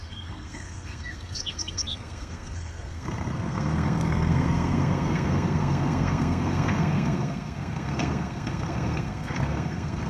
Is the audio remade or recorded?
remade